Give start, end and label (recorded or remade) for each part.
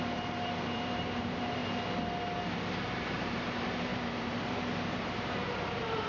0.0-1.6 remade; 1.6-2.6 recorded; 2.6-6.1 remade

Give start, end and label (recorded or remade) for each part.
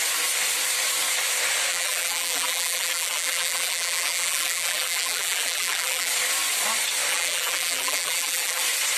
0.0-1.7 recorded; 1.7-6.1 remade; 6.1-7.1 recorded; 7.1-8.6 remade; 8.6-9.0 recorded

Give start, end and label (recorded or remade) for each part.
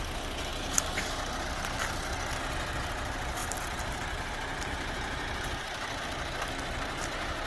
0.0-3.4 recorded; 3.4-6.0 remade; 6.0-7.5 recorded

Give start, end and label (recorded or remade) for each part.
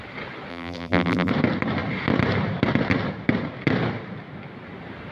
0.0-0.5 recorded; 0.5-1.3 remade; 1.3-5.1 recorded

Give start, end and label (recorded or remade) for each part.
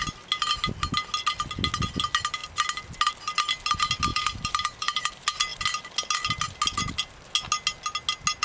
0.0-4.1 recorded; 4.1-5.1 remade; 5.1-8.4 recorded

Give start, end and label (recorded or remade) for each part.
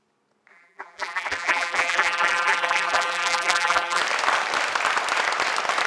0.0-0.5 recorded; 0.5-4.0 remade; 4.0-5.9 recorded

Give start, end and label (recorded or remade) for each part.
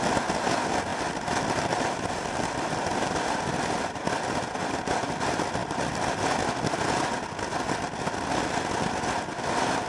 0.0-0.9 recorded; 0.9-2.1 remade; 2.1-5.6 recorded; 5.6-6.2 remade; 6.2-9.9 recorded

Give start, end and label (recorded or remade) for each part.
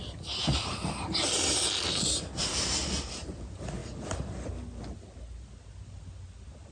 0.0-1.1 remade; 1.1-6.7 recorded